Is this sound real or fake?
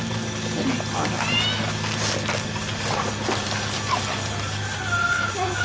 real